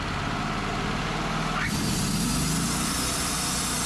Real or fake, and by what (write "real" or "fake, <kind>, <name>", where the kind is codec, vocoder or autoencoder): real